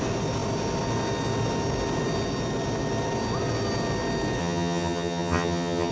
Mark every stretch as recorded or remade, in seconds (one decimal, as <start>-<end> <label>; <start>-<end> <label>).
0.0-4.4 recorded; 4.4-5.9 remade